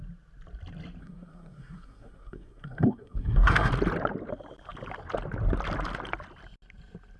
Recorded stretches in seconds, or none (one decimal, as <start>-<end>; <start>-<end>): 0.0-1.0; 3.7-7.2